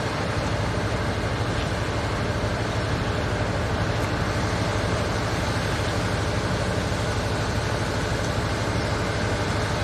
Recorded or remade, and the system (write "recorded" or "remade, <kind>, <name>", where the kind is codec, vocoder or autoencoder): recorded